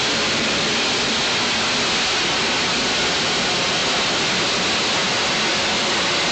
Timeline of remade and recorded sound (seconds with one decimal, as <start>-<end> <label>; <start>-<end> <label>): 0.0-6.3 recorded